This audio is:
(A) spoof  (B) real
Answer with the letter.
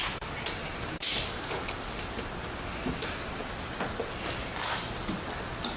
B